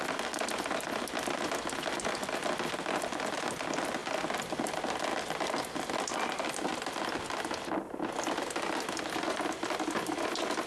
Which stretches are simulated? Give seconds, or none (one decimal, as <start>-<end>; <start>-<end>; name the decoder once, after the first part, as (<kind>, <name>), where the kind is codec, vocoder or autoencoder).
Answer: none